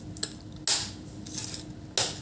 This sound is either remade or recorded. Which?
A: recorded